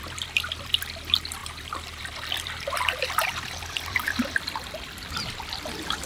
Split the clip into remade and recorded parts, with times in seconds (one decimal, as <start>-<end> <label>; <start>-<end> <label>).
0.0-1.4 recorded; 1.4-5.1 remade; 5.1-6.1 recorded